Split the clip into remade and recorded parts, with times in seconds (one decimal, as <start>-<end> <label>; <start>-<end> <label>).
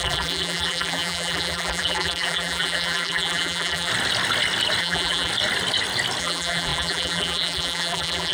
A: 0.0-3.9 remade; 3.9-4.8 recorded; 4.8-5.3 remade; 5.3-6.2 recorded; 6.2-8.3 remade